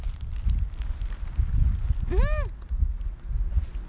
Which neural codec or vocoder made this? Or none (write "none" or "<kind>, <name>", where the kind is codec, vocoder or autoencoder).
none